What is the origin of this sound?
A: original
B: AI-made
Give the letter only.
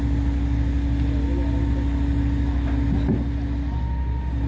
A